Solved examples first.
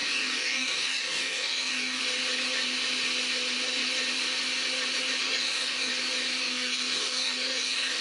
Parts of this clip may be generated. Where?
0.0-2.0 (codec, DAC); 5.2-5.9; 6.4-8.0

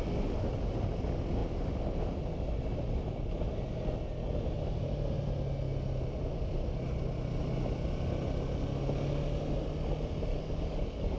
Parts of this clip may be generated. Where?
10.3-11.2 (codec, DAC)

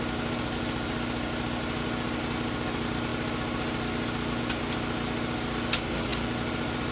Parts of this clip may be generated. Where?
none

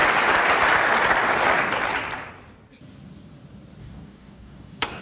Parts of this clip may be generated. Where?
3.8-5.0 (codec, DAC)